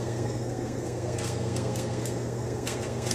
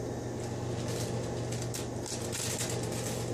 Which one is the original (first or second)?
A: second